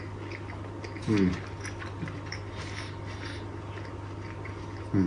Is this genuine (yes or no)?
yes